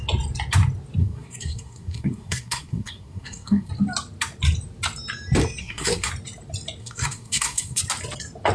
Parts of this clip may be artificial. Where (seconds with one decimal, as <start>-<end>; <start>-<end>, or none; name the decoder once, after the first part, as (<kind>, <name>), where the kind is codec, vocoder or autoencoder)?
1.0-3.7 (codec, SNAC); 5.6-6.1; 6.8-7.8